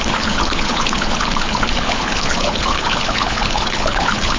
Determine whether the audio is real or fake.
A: fake